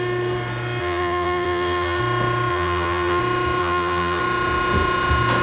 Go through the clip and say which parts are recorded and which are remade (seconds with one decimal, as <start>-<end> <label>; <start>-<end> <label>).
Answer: 0.0-0.8 recorded; 0.8-2.0 remade; 2.0-2.5 recorded; 2.5-3.2 remade; 3.2-3.6 recorded; 3.6-4.2 remade; 4.2-5.4 recorded